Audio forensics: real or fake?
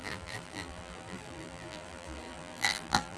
fake